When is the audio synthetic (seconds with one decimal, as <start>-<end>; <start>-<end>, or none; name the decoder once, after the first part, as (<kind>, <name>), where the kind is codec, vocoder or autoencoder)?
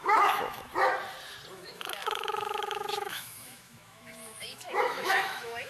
0.0-0.7 (autoencoder, DAC-VAE); 1.5-5.7